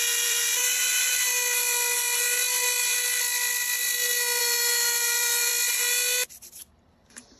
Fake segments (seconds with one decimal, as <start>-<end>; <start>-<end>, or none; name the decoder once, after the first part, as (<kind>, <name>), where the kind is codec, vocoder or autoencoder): 0.0-1.3 (vocoder, BigVGAN v2); 4.4-5.5; 6.8-7.4